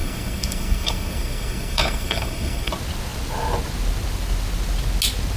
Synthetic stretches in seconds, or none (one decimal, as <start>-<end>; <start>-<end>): 0.0-2.7